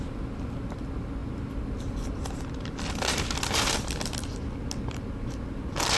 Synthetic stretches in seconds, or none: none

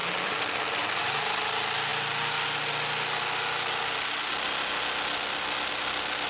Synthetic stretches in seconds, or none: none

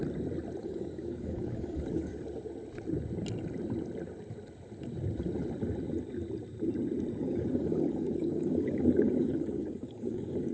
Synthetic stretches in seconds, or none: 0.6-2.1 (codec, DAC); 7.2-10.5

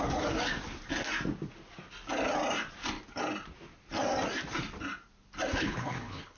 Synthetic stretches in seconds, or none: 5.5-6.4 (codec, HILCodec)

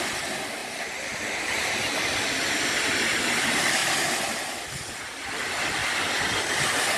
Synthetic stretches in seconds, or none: none